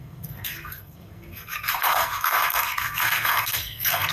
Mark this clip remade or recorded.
remade